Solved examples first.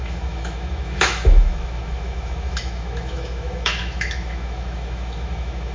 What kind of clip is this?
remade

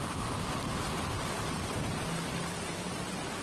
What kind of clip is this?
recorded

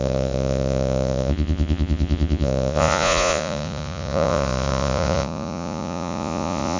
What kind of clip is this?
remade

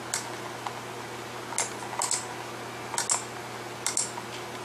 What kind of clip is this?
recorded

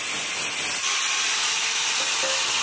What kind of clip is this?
recorded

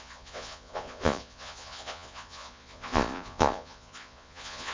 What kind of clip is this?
remade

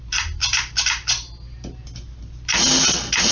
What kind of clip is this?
recorded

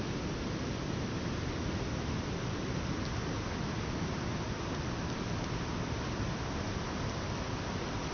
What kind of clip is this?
recorded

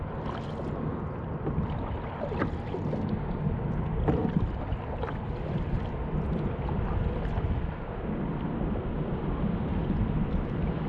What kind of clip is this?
recorded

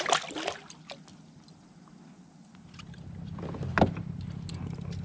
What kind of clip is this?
recorded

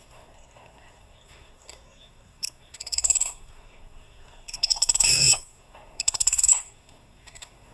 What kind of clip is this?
remade